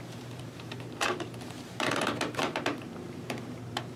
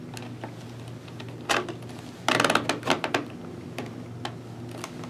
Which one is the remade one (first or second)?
first